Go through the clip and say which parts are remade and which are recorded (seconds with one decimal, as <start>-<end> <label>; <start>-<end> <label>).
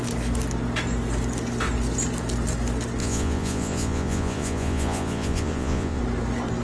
0.0-3.0 recorded; 3.0-6.0 remade; 6.0-6.6 recorded